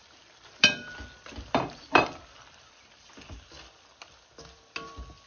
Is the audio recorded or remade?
recorded